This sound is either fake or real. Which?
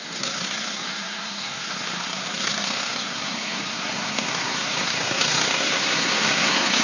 fake